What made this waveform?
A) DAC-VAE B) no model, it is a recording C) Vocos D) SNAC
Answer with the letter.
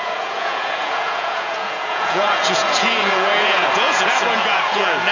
C